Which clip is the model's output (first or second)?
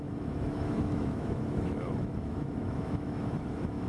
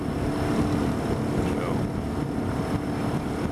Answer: first